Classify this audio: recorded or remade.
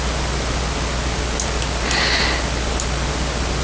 recorded